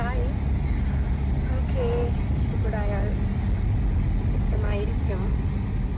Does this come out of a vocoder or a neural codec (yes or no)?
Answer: no